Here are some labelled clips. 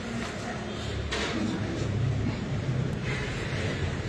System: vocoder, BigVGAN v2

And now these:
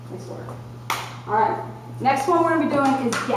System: none